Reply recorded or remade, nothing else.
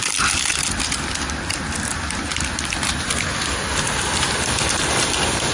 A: recorded